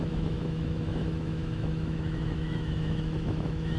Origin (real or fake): fake